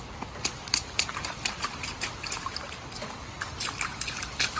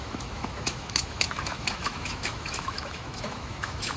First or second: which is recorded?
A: first